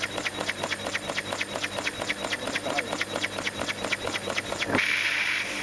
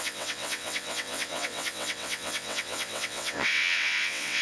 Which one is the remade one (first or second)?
second